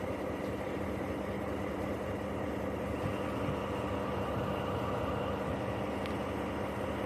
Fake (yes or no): no